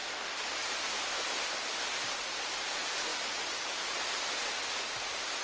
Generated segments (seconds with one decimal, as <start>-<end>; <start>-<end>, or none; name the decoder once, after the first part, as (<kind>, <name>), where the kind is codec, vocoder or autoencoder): 0.0-2.4 (vocoder, BigVGAN v2); 3.1-4.0